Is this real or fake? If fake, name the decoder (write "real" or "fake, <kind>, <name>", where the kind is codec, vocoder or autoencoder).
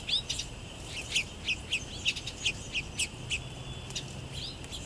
real